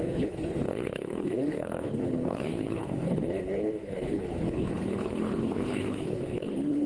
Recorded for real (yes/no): no